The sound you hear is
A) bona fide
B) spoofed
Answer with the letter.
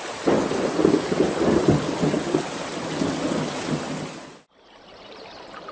A